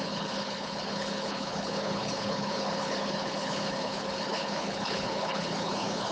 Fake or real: fake